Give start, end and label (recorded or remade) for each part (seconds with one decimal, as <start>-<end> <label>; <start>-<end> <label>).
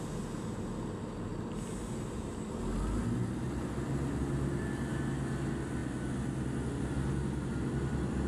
0.0-8.3 recorded